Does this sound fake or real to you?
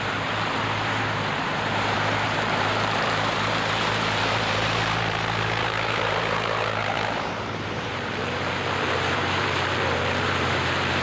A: fake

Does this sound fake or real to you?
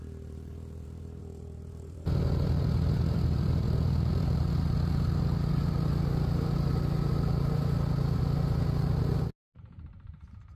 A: fake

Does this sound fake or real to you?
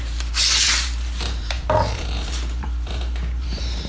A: fake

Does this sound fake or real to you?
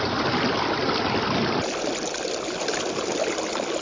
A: real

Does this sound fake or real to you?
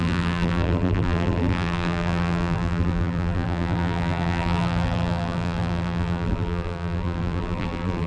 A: fake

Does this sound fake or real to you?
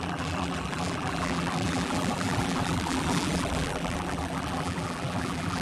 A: fake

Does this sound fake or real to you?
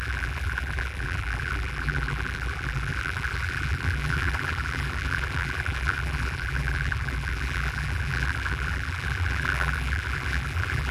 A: fake